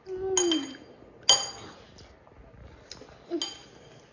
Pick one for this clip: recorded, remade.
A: recorded